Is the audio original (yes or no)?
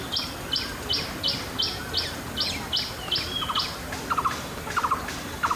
yes